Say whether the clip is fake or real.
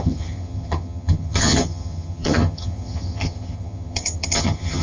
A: fake